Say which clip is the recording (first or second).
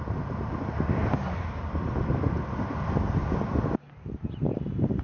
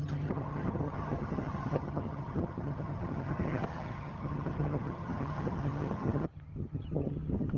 first